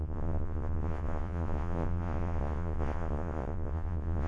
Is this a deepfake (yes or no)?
yes